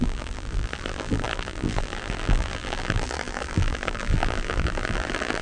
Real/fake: fake